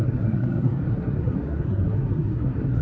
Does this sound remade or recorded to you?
remade